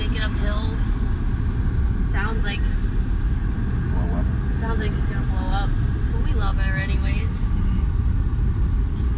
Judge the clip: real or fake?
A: real